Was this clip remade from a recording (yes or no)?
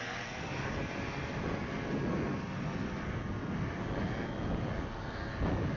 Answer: no